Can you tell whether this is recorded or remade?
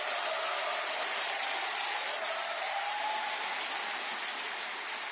recorded